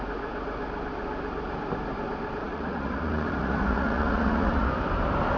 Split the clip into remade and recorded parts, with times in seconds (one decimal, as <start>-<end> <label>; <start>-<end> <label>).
0.0-2.4 recorded; 2.4-4.7 remade; 4.7-5.4 recorded